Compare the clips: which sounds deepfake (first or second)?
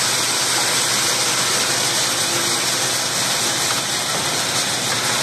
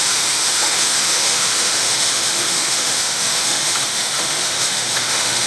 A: second